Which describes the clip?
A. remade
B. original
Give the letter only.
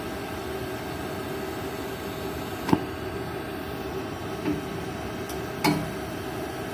B